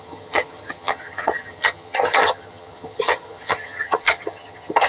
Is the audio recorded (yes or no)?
no